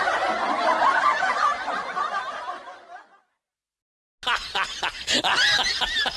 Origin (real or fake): real